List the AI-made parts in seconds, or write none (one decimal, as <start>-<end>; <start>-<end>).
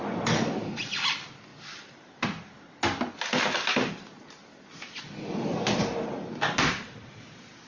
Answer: none